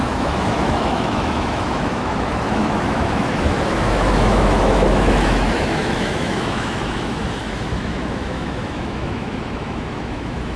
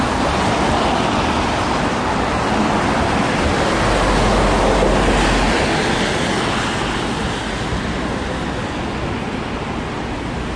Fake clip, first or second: first